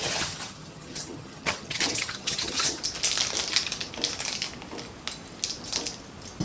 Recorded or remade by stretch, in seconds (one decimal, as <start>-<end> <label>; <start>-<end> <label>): 0.0-2.8 remade; 2.8-6.4 recorded